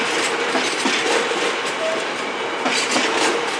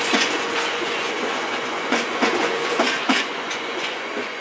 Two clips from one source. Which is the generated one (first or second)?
second